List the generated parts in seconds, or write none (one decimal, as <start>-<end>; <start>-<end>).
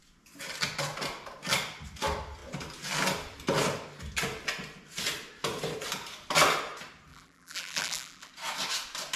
7.1-8.3